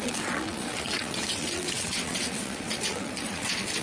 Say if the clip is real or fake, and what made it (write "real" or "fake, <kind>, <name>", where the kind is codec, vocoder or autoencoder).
fake, vocoder, WaveNeXt